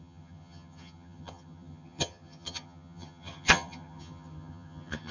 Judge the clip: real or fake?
fake